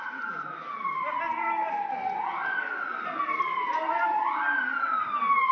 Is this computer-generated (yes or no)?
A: no